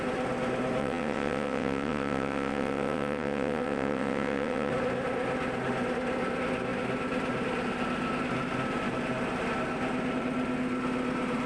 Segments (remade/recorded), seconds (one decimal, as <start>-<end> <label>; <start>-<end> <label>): 0.0-0.8 recorded; 0.8-4.7 remade; 4.7-11.5 recorded